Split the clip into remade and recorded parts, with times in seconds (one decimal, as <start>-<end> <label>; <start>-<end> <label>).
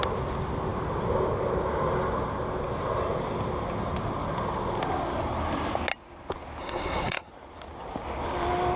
0.0-6.6 recorded; 6.6-7.3 remade; 7.3-8.8 recorded